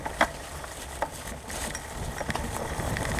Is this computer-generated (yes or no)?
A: no